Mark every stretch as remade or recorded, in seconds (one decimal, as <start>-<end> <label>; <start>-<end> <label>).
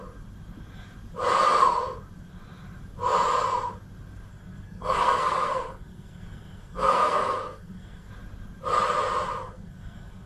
0.0-4.3 recorded; 4.3-8.1 remade; 8.1-9.4 recorded; 9.4-10.3 remade